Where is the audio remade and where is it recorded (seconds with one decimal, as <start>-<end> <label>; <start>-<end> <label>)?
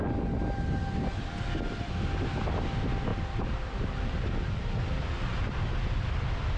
0.0-6.6 recorded